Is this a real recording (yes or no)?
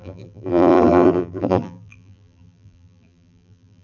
no